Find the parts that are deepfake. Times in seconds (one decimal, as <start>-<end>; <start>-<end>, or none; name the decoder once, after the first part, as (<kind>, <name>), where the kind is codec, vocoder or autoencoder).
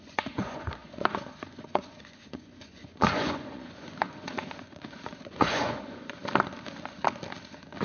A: 0.0-6.2 (vocoder, Vocos)